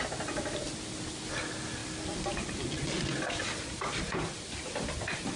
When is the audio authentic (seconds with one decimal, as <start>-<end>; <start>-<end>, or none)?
0.0-1.8; 5.0-5.4